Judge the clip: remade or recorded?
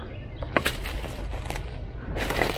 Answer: recorded